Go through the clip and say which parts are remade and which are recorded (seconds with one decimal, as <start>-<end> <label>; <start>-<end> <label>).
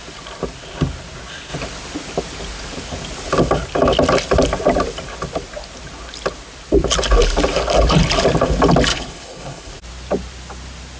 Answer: 0.0-8.9 recorded; 8.9-9.7 remade; 9.7-11.0 recorded